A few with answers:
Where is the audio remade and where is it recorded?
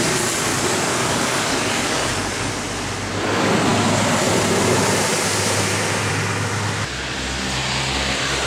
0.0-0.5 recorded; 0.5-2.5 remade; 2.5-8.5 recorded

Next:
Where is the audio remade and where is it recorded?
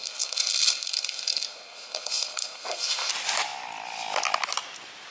0.0-3.1 remade; 3.1-5.1 recorded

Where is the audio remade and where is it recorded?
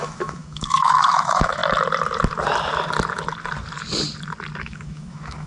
0.0-1.6 remade; 1.6-4.6 recorded; 4.6-5.5 remade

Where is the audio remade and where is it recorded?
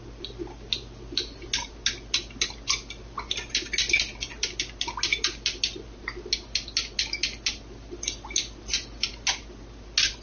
0.0-10.2 recorded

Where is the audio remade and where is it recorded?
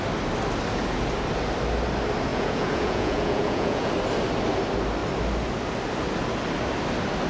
0.0-2.3 recorded; 2.3-3.9 remade; 3.9-7.3 recorded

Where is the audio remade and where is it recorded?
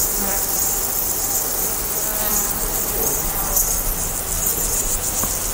0.0-4.5 recorded; 4.5-5.1 remade; 5.1-5.5 recorded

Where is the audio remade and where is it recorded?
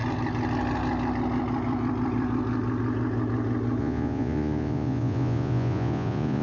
0.0-3.8 recorded; 3.8-6.4 remade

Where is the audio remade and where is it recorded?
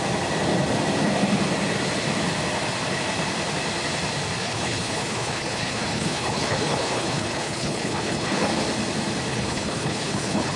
0.0-4.4 recorded; 4.4-8.5 remade; 8.5-9.3 recorded; 9.3-10.6 remade